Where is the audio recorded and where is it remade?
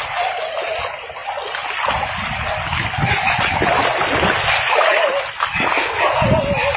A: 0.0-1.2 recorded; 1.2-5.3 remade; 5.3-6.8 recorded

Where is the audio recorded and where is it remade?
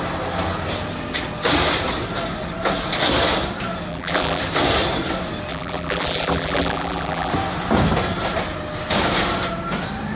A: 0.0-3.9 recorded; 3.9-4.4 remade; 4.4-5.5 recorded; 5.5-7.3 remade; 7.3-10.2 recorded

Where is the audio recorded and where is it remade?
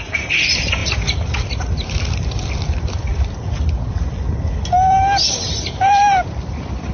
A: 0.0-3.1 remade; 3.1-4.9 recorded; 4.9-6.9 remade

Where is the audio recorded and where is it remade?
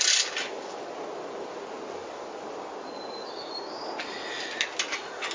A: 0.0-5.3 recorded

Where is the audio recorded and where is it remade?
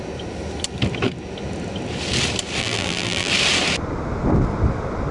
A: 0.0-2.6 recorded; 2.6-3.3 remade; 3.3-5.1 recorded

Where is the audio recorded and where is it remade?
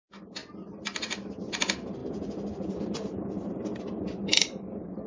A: 0.0-2.0 recorded; 2.0-5.1 remade